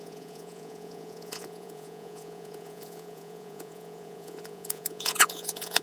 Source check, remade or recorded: remade